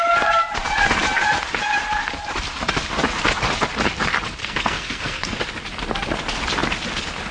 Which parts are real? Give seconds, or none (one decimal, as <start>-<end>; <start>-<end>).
0.0-4.4; 5.4-7.3